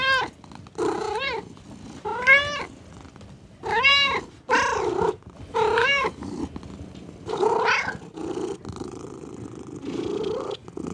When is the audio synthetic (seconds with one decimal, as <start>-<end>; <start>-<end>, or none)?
5.8-6.4